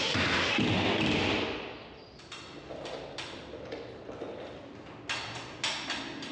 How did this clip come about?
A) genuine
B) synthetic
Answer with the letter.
A